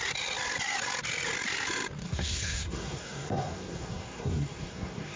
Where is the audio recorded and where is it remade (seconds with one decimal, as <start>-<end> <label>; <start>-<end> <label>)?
0.0-2.0 recorded; 2.0-5.2 remade